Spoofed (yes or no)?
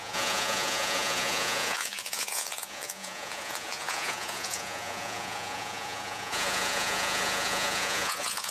yes